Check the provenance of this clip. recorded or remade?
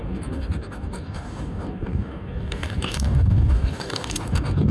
remade